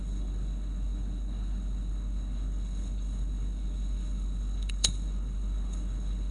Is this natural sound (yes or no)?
no